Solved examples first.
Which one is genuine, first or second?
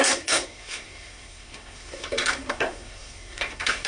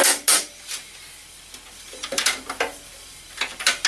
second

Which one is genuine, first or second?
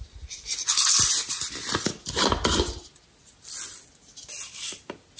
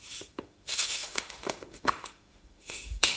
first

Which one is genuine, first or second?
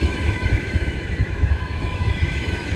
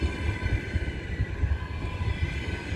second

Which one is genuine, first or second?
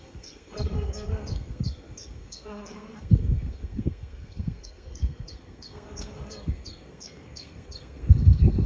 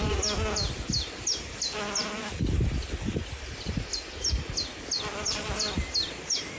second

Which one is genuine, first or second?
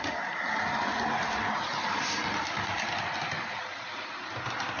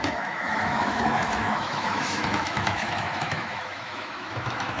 first